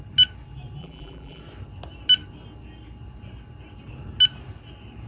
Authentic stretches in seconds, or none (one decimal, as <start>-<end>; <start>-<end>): 0.0-0.8; 1.4-5.1

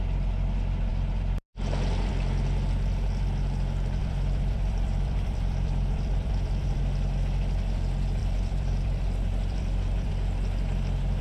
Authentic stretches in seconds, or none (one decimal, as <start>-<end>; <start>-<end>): 0.0-4.0; 6.8-8.2; 10.1-11.2